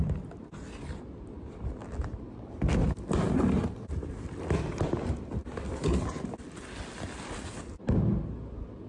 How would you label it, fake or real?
real